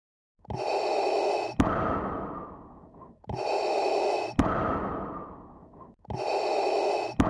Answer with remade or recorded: recorded